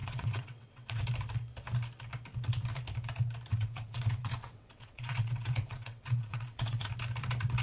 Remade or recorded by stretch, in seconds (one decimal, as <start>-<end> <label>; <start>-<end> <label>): 0.0-1.0 remade; 1.0-3.5 recorded; 3.5-6.9 remade; 6.9-7.6 recorded